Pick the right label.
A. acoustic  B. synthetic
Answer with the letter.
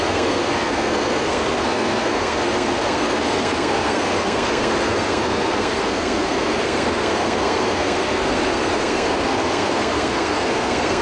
B